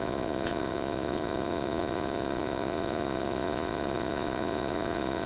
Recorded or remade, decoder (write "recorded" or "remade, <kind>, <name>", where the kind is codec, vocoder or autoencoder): remade, vocoder, Vocos